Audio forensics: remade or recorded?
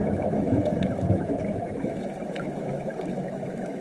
remade